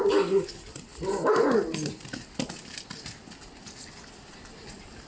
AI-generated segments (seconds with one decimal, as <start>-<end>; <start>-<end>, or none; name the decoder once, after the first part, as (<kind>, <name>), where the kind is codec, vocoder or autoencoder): none

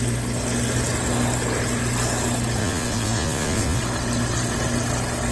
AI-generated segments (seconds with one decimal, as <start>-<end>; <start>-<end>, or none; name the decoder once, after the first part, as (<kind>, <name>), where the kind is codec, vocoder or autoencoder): 2.6-3.8 (vocoder, Vocos)